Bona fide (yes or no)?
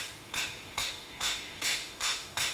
no